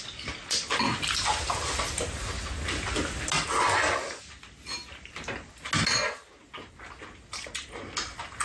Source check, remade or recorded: recorded